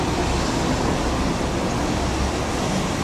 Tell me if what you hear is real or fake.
real